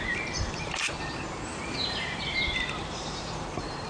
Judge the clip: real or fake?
fake